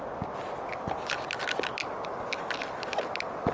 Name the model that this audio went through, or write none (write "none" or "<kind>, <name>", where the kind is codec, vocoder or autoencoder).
none